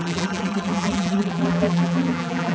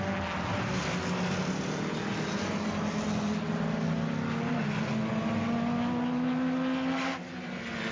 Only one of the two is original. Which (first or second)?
second